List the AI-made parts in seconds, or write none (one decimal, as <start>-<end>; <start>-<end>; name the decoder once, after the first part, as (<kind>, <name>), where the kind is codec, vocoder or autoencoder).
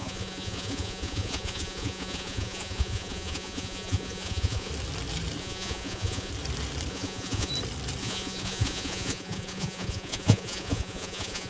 0.0-4.7 (vocoder, Vocos); 5.4-6.3; 6.9-7.5; 8.0-11.5